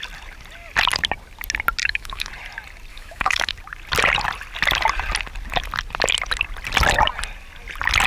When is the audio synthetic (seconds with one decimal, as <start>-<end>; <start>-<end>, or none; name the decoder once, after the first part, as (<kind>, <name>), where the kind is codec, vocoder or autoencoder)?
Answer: 1.8-2.3 (autoencoder, DAC-VAE); 2.9-3.5